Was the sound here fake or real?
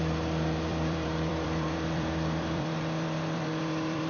fake